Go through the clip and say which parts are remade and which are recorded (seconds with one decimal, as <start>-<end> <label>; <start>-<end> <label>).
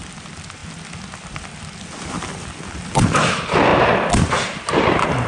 0.0-5.3 recorded